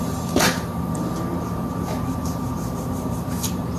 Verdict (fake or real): fake